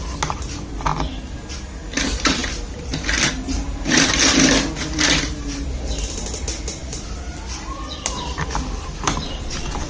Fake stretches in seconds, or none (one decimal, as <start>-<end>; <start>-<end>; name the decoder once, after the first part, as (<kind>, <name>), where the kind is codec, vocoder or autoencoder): 2.4-3.3 (vocoder, BigVGAN v2); 6.8-9.9